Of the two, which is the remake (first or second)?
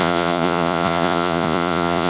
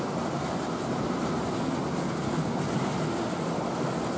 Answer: first